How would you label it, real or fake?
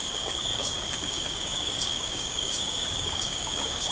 fake